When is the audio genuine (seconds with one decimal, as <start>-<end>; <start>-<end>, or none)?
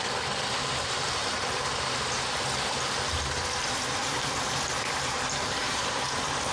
0.0-1.2; 1.9-4.0; 5.8-6.5